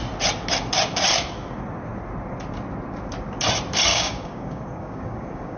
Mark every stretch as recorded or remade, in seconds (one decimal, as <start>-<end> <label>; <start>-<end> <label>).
0.0-3.9 recorded; 3.9-5.6 remade